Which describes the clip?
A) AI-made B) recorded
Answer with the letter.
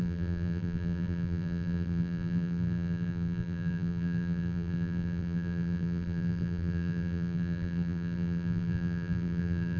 A